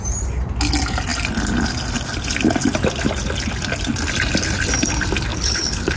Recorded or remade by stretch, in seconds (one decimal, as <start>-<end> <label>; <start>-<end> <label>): 0.0-5.3 recorded; 5.3-6.0 remade